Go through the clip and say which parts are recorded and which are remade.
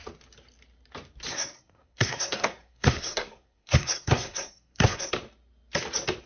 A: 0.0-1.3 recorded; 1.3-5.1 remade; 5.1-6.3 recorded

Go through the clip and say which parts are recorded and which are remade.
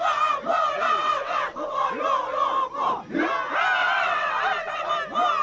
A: 0.0-0.8 recorded; 0.8-1.9 remade; 1.9-3.8 recorded; 3.8-4.9 remade; 4.9-5.4 recorded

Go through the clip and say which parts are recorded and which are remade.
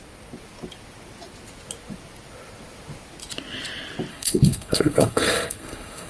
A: 0.0-4.1 recorded; 4.1-6.1 remade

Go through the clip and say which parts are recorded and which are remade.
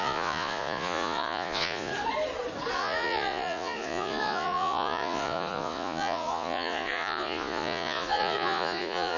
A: 0.0-1.9 remade; 1.9-2.7 recorded; 2.7-9.2 remade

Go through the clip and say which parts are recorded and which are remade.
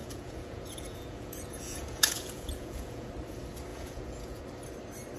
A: 0.0-3.1 remade; 3.1-3.7 recorded; 3.7-4.4 remade; 4.4-5.2 recorded